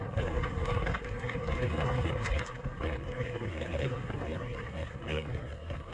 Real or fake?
fake